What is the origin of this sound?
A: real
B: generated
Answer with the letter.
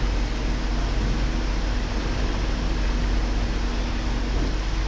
A